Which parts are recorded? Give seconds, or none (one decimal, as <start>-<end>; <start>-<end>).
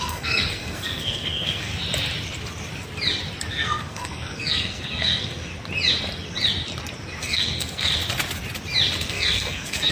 1.7-3.5; 5.5-7.2; 8.0-9.1